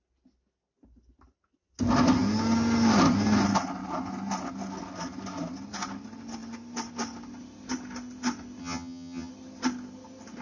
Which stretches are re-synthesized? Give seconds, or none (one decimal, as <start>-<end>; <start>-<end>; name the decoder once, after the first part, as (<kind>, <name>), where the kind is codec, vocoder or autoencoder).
8.6-9.3 (vocoder, HiFi-GAN)